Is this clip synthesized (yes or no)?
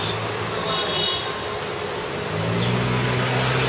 no